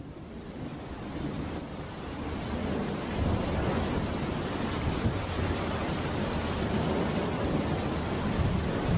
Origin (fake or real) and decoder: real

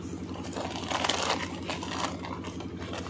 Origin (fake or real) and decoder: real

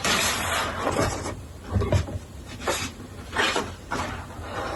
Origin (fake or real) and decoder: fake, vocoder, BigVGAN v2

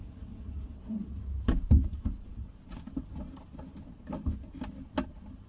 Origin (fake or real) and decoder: real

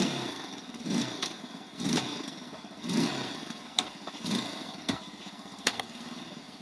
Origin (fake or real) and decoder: fake, codec, SNAC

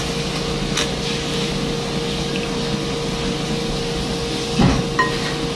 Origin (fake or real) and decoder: real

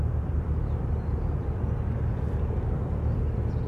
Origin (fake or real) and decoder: fake, vocoder, BigVGAN v2